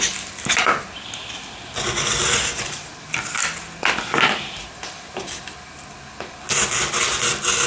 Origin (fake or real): real